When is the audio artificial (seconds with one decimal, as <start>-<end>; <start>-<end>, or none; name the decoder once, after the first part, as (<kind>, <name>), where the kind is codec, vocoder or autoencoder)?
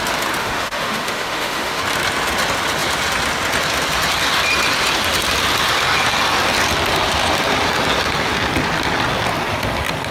0.4-1.8 (autoencoder, DAC-VAE)